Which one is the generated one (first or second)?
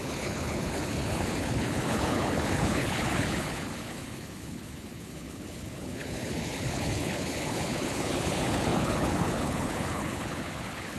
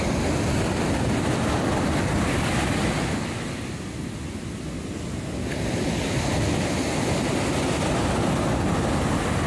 first